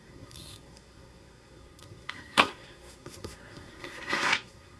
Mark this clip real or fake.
fake